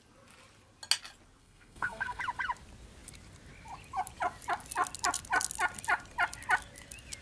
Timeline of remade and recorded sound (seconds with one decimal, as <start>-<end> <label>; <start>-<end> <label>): 0.0-1.4 recorded; 1.4-2.2 remade; 2.2-7.2 recorded